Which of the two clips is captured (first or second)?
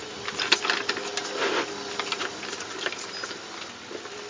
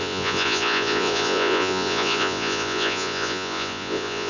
first